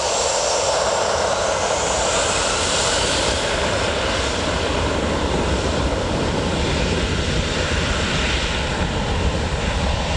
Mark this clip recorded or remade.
remade